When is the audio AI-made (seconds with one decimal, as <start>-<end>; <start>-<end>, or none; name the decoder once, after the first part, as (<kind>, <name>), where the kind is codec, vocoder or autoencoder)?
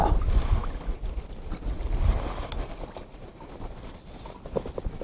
none